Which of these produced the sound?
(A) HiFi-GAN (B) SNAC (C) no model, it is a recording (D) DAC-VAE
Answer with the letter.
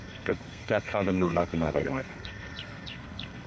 B